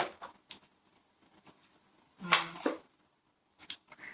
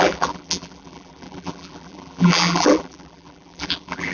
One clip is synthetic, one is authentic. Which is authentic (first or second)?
first